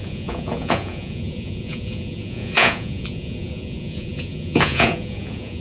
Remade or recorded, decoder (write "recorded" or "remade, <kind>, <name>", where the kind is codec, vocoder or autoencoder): remade, vocoder, Vocos